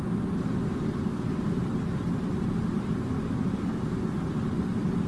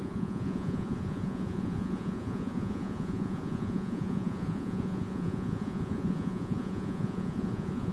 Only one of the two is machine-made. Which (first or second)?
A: second